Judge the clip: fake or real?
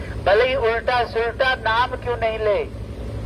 real